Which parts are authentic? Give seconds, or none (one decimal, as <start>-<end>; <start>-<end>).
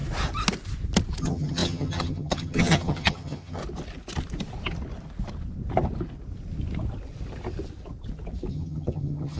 0.0-1.2; 3.6-8.5